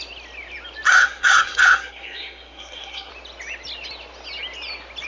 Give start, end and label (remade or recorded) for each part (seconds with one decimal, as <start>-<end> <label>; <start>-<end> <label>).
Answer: 0.0-0.9 recorded; 0.9-3.1 remade; 3.1-5.1 recorded